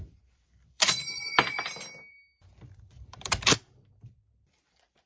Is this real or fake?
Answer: fake